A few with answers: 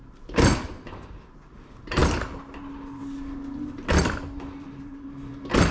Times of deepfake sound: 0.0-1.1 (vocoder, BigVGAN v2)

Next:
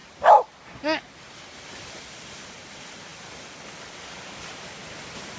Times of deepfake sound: none

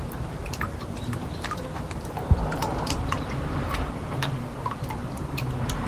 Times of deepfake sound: 0.4-3.9 (vocoder, BigVGAN v2)

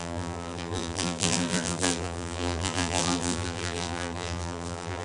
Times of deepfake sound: 0.0-5.0 (vocoder, BigVGAN v2)

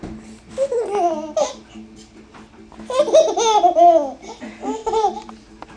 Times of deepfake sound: 4.8-5.8 (vocoder, BigVGAN v2)

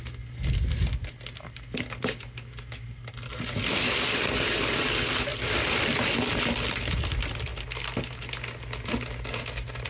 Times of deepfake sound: none

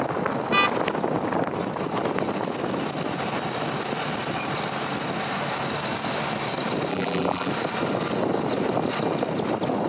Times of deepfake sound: 6.9-7.5 (vocoder, BigVGAN v2)